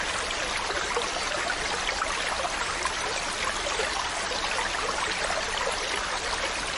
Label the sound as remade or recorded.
recorded